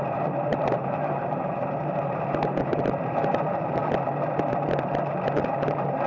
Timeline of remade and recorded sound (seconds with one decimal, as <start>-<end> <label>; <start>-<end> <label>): 0.0-3.8 remade; 3.8-6.1 recorded